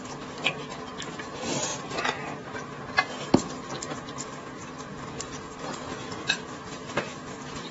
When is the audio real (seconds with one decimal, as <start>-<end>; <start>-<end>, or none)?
0.0-7.7